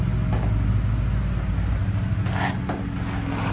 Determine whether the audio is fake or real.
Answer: real